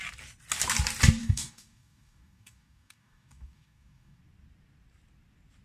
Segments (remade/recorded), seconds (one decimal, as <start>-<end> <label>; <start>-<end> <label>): 0.0-1.2 recorded; 1.2-4.2 remade; 4.2-5.6 recorded